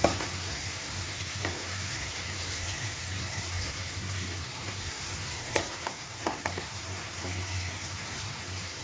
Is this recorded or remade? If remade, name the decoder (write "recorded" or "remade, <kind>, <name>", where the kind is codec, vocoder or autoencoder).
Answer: remade, codec, SNAC